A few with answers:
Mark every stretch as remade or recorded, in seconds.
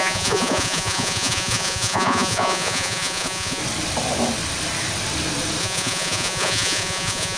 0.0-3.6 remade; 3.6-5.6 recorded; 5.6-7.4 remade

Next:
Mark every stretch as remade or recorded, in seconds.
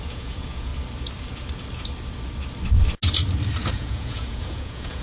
0.0-0.7 remade; 0.7-3.7 recorded; 3.7-5.0 remade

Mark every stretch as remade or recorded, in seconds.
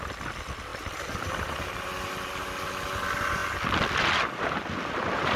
0.0-5.4 recorded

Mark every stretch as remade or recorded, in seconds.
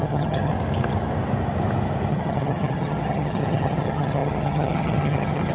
0.0-0.5 remade; 0.5-2.1 recorded; 2.1-5.5 remade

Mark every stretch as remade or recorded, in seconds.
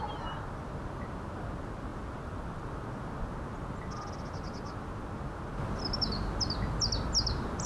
0.0-7.7 recorded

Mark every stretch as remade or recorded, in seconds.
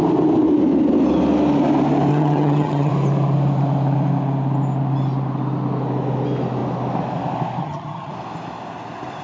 0.0-2.1 recorded; 2.1-2.9 remade; 2.9-7.6 recorded; 7.6-8.1 remade; 8.1-9.2 recorded